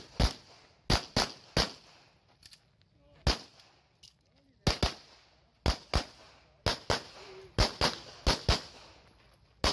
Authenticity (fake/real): real